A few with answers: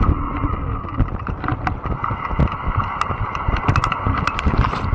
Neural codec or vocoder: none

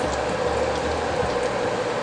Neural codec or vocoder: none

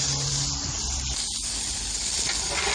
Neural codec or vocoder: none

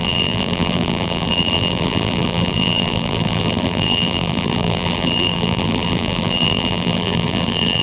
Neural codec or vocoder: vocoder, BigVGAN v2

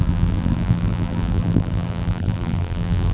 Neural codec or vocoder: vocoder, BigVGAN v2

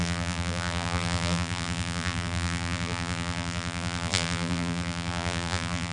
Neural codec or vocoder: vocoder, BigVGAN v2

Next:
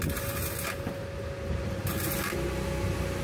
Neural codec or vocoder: none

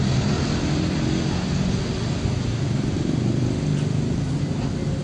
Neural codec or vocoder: vocoder, BigVGAN v2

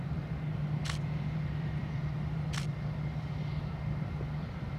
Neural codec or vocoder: vocoder, BigVGAN v2